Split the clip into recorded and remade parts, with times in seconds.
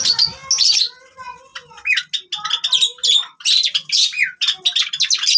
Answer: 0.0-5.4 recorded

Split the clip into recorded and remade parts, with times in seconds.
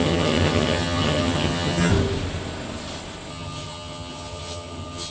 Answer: 0.0-1.9 remade; 1.9-3.3 recorded; 3.3-5.1 remade